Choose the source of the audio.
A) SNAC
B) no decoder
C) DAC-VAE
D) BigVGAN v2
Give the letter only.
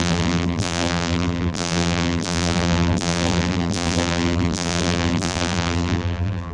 D